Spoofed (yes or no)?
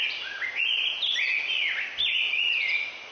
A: no